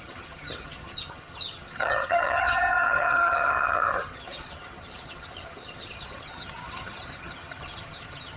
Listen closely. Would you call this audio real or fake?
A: fake